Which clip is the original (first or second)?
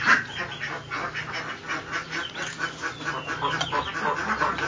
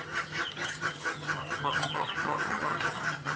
first